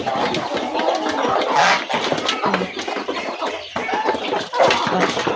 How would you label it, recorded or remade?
recorded